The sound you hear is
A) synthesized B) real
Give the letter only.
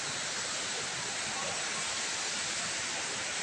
B